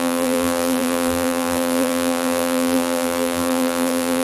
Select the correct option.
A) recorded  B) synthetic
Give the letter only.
B